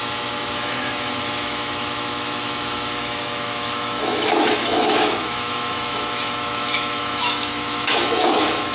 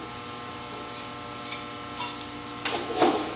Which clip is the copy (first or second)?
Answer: first